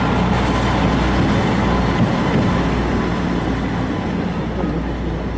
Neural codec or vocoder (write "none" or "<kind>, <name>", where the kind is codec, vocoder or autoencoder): none